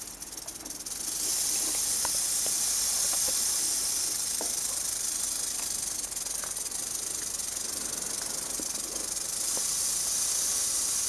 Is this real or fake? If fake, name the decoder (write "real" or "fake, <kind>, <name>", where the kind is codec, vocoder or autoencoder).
real